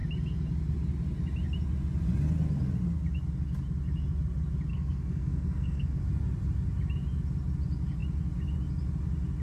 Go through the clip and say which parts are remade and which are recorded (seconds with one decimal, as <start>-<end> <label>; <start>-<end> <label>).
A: 0.0-4.7 recorded; 4.7-6.0 remade; 6.0-9.4 recorded